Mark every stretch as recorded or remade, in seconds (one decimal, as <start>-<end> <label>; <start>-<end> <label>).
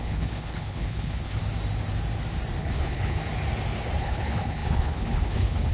0.0-1.4 remade; 1.4-2.6 recorded; 2.6-3.2 remade; 3.2-4.0 recorded; 4.0-5.7 remade